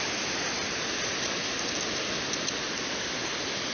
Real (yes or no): yes